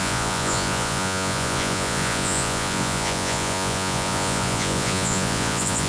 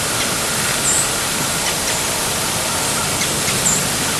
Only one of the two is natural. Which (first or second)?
second